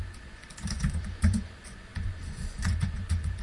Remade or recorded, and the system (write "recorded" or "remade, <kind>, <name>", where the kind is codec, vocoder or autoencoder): remade, vocoder, Vocos